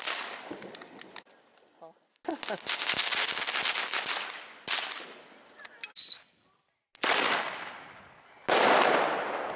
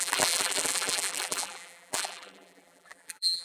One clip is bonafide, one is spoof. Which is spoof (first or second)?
second